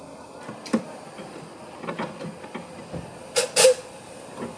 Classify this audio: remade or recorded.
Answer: recorded